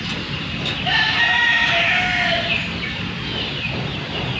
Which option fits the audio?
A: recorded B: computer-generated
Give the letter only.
A